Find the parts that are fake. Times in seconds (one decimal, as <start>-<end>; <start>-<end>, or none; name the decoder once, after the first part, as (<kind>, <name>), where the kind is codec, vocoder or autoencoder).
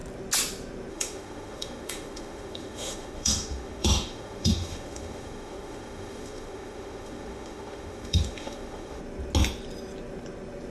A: 0.9-9.0 (autoencoder, DAC-VAE)